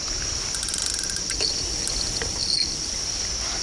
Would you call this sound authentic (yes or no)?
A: yes